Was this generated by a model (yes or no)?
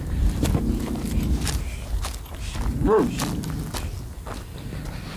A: no